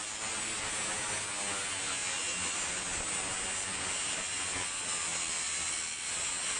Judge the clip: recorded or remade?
recorded